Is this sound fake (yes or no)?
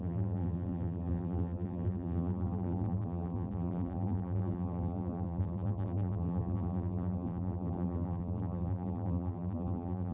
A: yes